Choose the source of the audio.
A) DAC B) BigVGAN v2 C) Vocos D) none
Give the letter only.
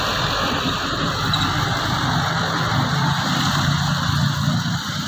D